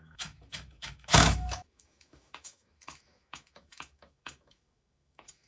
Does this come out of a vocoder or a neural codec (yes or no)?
yes